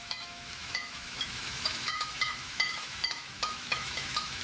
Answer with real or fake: fake